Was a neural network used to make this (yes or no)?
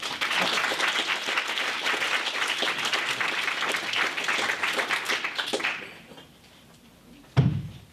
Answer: no